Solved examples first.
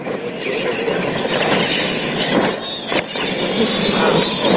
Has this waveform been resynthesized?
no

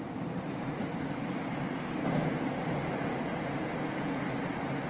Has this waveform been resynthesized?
no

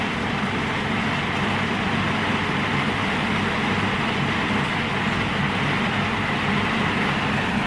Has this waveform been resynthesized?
no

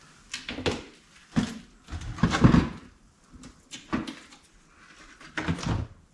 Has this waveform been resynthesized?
no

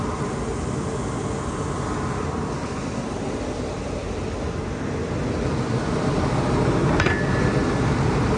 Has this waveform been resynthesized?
no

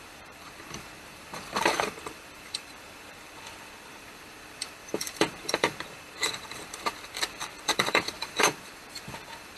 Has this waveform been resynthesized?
yes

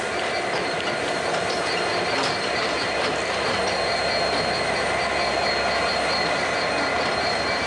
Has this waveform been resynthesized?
no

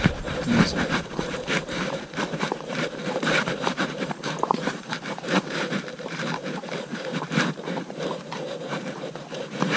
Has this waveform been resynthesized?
yes